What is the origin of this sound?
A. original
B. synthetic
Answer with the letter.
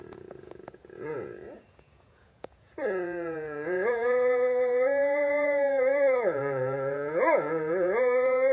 B